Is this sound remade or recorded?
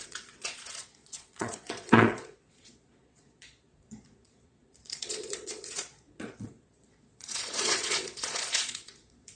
remade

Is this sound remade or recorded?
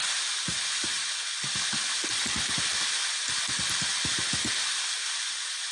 recorded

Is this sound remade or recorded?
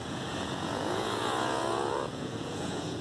remade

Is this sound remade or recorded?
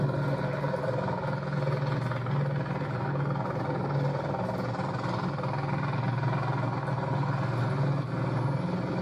recorded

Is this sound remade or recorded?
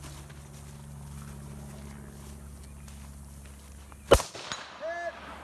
recorded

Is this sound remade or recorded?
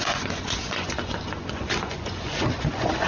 remade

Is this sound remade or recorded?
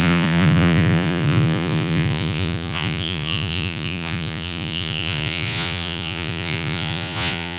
remade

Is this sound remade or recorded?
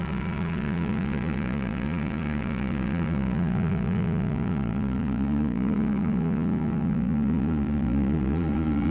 remade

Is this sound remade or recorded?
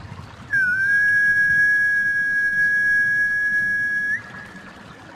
recorded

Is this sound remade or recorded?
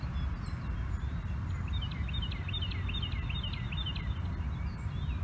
recorded